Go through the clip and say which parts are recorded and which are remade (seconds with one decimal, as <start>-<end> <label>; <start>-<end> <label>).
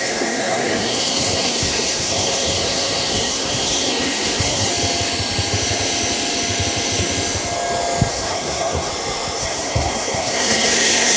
0.0-4.7 remade; 4.7-8.1 recorded; 8.1-8.9 remade; 8.9-9.4 recorded; 9.4-11.2 remade